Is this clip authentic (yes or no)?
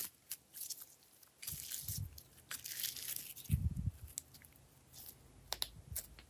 yes